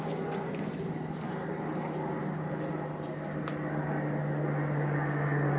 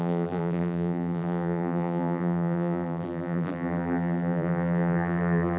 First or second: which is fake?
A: second